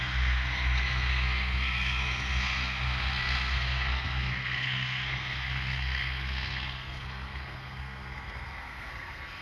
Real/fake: fake